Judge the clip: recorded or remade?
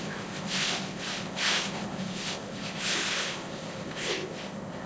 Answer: remade